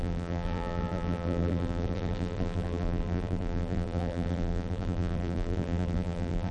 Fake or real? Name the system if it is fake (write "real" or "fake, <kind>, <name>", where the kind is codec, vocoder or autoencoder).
fake, vocoder, BigVGAN v2